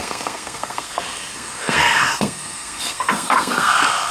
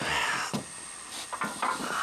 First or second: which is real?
second